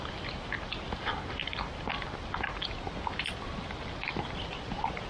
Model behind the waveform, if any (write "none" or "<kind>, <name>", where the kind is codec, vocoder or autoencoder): none